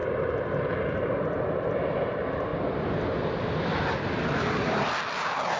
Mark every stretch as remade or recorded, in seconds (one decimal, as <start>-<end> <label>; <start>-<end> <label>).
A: 0.0-5.6 recorded